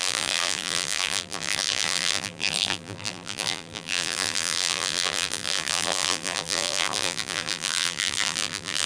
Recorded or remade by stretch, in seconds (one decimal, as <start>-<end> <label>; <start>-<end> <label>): 0.0-8.9 remade